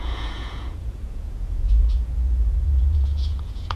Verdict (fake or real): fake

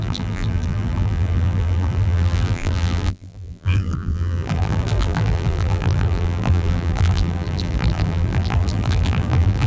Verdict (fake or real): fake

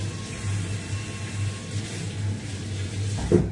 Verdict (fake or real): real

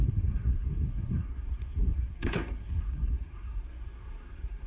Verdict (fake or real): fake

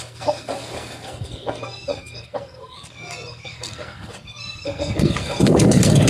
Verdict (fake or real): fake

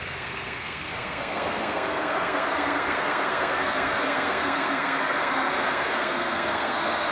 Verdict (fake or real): fake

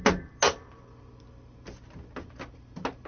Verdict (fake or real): real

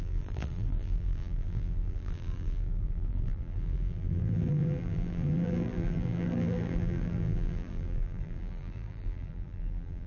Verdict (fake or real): fake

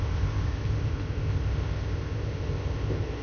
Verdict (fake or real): fake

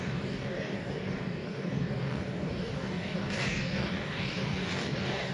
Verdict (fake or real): fake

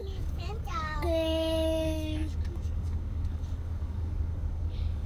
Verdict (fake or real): fake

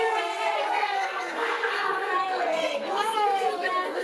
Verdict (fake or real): fake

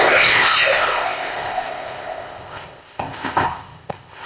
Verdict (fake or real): fake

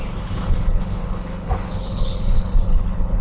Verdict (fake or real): fake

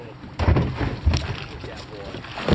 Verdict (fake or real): real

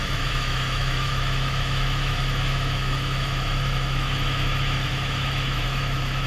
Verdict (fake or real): fake